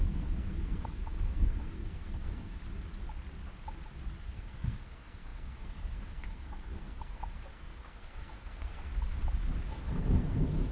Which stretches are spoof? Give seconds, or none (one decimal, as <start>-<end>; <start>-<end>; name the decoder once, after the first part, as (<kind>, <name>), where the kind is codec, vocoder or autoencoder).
0.0-2.6 (codec, SNAC); 4.2-8.9; 9.7-10.7